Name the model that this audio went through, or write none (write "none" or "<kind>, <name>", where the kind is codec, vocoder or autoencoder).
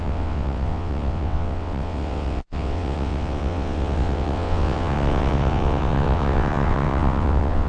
vocoder, WaveNeXt